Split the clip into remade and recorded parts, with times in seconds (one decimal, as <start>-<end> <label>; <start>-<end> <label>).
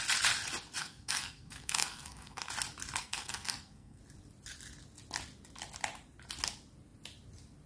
0.0-0.8 recorded; 0.8-2.5 remade; 2.5-3.0 recorded; 3.0-4.0 remade; 4.0-7.7 recorded